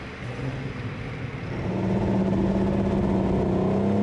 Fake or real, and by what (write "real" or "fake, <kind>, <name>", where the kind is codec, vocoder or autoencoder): real